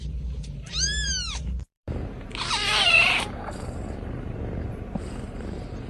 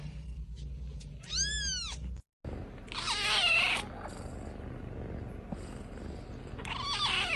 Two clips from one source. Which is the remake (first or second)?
first